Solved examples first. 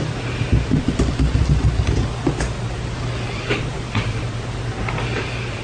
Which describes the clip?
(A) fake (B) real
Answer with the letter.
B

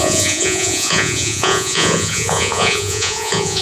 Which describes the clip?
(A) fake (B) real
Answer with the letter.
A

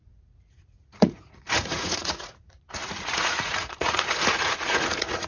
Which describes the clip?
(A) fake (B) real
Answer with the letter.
A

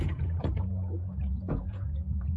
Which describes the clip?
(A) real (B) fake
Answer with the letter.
B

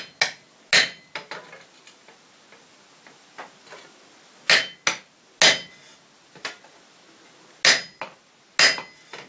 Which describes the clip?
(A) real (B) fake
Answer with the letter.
A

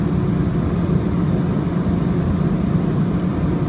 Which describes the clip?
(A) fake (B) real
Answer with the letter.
B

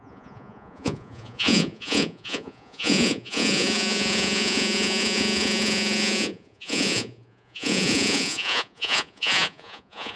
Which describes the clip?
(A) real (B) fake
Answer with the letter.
B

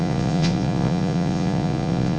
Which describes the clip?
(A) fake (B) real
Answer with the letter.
A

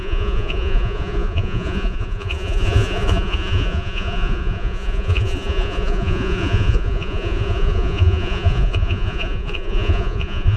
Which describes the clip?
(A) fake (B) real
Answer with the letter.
A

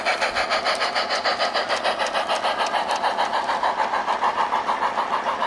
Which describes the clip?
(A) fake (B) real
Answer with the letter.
B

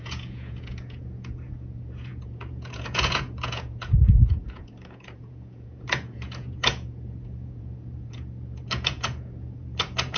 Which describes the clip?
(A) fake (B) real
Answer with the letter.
A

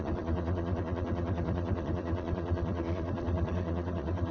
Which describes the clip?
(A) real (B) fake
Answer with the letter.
B